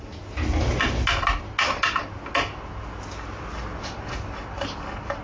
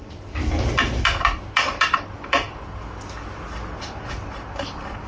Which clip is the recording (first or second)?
first